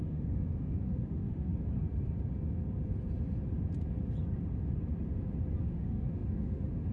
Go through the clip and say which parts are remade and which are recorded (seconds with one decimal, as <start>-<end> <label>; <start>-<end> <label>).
0.0-1.5 remade; 1.5-5.6 recorded; 5.6-6.9 remade